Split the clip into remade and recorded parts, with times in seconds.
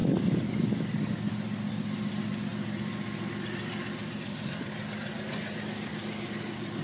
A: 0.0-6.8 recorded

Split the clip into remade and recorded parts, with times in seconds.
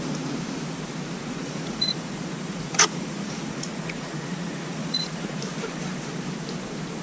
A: 0.0-1.2 recorded; 1.2-5.4 remade; 5.4-7.0 recorded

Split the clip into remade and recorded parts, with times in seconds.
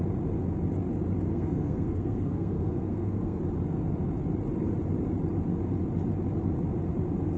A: 0.0-1.3 recorded; 1.3-3.4 remade; 3.4-7.4 recorded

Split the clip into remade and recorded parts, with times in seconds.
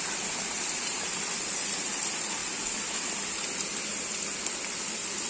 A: 0.0-2.4 remade; 2.4-5.3 recorded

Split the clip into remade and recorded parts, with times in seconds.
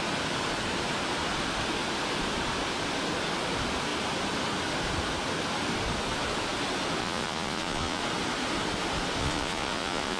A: 0.0-7.0 recorded; 7.0-8.0 remade; 8.0-9.2 recorded; 9.2-10.2 remade